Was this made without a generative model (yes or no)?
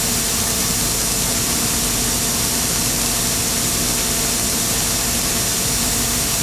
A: yes